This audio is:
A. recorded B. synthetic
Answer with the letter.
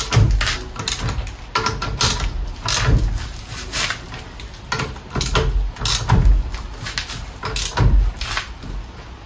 A